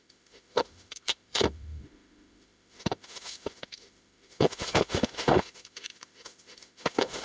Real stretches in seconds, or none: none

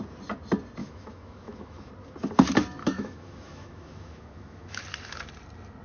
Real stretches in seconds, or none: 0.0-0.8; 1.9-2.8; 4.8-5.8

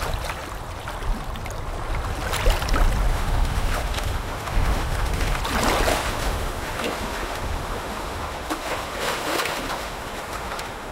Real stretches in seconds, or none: 0.0-3.1; 5.4-5.9

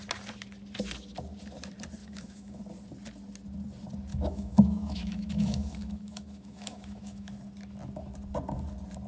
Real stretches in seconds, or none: 0.0-2.0; 2.6-4.1; 7.3-9.1

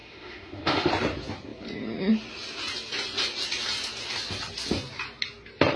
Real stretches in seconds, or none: 0.9-5.8

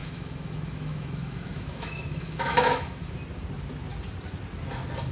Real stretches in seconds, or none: 3.1-5.1